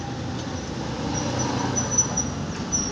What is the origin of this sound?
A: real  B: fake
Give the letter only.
A